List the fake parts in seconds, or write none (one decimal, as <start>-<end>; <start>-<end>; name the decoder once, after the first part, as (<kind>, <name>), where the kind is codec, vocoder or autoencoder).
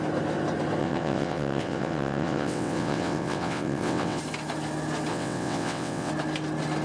0.8-4.2 (vocoder, WaveNeXt); 5.1-6.1